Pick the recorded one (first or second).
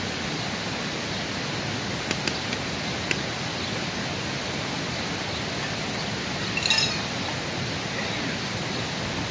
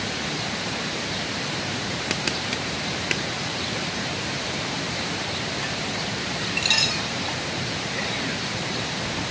first